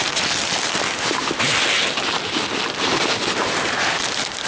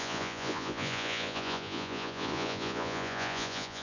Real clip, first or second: first